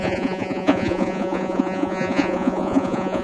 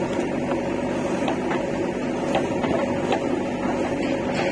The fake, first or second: first